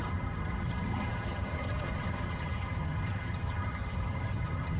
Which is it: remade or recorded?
remade